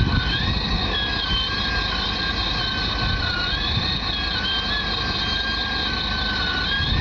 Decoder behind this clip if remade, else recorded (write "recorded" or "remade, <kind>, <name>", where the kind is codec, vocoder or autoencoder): recorded